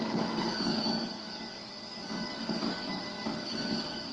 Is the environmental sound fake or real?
fake